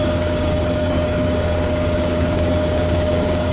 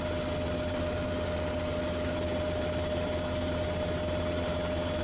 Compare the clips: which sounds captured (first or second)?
second